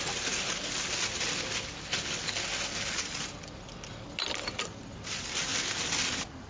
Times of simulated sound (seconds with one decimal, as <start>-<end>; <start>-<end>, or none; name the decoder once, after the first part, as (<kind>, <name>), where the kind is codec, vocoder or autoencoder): none